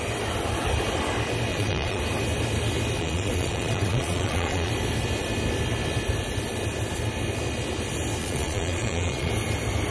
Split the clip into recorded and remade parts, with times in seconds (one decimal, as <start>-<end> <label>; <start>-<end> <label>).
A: 0.0-1.5 recorded; 1.5-2.0 remade; 2.0-3.0 recorded; 3.0-4.7 remade; 4.7-8.2 recorded; 8.2-9.3 remade; 9.3-9.9 recorded

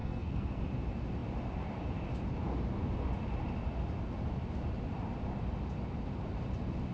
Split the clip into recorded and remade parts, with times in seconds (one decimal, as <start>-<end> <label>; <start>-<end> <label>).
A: 0.0-0.6 remade; 0.6-6.9 recorded